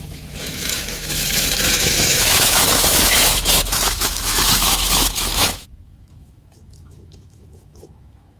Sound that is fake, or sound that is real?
fake